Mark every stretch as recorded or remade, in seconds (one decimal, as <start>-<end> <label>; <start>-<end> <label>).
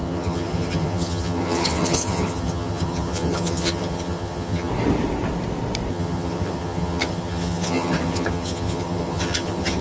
0.0-4.7 remade; 4.7-5.9 recorded; 5.9-9.8 remade